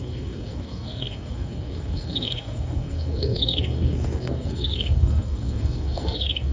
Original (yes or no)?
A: no